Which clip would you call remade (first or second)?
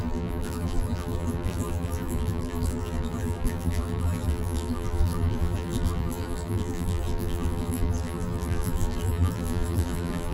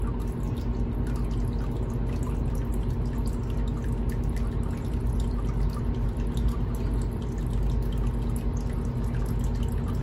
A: first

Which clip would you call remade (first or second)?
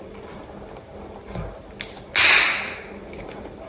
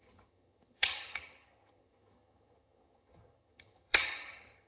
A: second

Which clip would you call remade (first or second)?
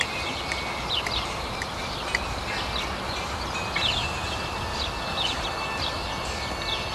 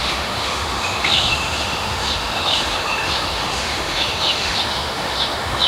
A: second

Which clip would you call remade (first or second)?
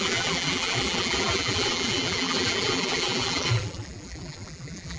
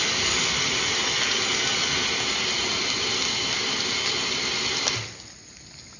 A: first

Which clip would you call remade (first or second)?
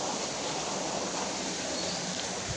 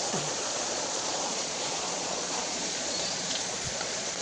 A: second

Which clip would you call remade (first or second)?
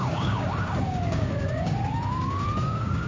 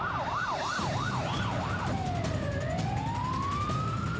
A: first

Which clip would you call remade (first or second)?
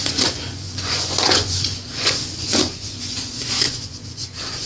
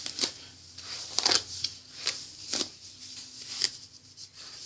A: first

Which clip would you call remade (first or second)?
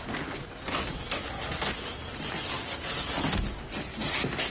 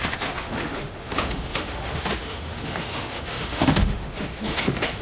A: second